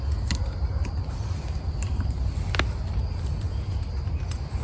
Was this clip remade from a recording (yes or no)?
no